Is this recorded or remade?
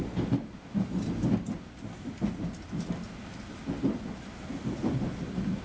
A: recorded